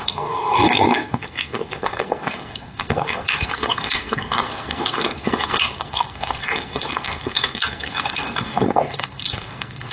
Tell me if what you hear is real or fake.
fake